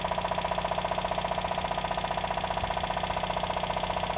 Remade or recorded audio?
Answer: recorded